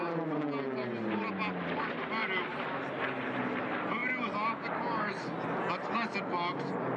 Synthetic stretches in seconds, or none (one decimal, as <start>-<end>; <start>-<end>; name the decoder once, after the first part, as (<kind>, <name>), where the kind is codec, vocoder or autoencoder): none